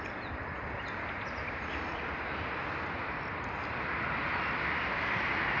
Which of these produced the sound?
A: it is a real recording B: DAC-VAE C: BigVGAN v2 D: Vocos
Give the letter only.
A